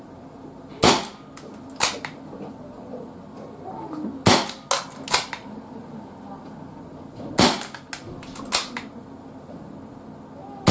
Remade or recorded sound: recorded